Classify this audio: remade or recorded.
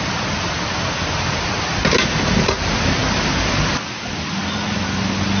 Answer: recorded